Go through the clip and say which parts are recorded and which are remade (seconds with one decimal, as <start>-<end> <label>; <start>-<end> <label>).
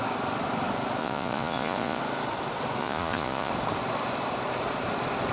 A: 0.0-1.0 recorded; 1.0-2.0 remade; 2.0-2.8 recorded; 2.8-3.5 remade; 3.5-5.3 recorded